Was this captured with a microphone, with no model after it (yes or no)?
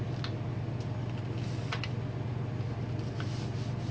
yes